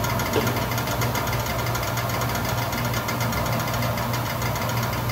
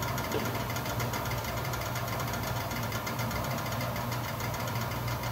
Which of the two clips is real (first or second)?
first